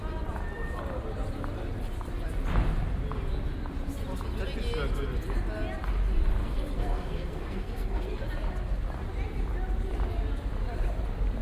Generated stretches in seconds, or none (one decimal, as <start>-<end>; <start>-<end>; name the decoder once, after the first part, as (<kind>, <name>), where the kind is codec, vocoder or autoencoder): 6.4-8.2 (codec, SNAC)